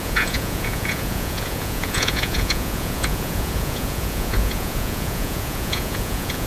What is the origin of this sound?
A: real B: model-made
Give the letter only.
B